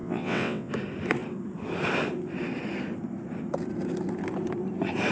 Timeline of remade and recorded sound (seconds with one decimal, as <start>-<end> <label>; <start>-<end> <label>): 0.0-0.7 remade; 0.7-5.1 recorded